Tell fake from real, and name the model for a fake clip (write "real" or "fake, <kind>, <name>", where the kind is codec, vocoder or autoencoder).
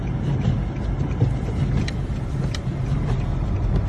real